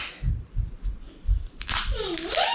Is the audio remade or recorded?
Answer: recorded